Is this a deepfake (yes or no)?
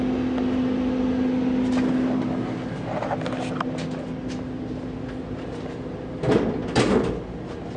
no